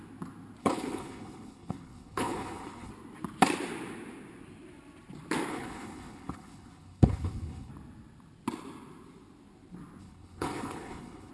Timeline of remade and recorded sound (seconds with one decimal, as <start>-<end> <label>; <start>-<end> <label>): 0.0-0.6 recorded; 0.6-2.9 remade; 2.9-5.5 recorded; 5.5-7.7 remade; 7.7-10.0 recorded; 10.0-11.3 remade